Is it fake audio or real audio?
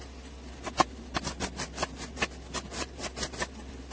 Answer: real